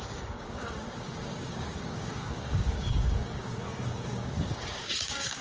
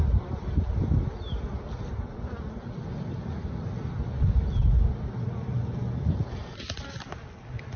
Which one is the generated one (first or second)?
first